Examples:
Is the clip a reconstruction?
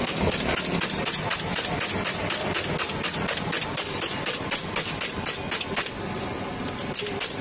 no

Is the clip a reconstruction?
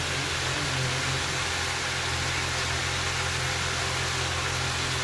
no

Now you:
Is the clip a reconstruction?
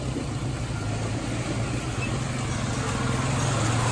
no